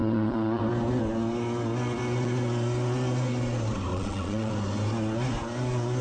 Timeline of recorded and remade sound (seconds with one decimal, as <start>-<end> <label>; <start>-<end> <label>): 0.0-0.6 remade; 0.6-3.9 recorded; 3.9-4.5 remade; 4.5-6.0 recorded